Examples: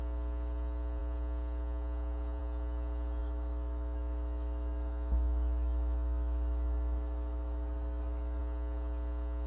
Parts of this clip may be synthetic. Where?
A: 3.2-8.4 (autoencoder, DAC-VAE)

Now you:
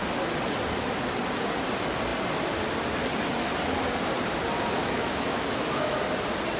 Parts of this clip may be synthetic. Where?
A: 4.8-6.0 (autoencoder, DAC-VAE)

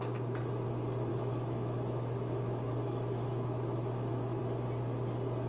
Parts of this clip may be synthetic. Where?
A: 1.1-4.4 (autoencoder, DAC-VAE)